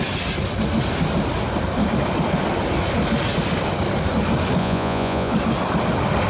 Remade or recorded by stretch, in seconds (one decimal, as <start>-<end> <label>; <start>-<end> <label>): 0.0-4.6 recorded; 4.6-5.3 remade; 5.3-6.3 recorded